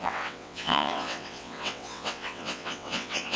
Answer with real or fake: fake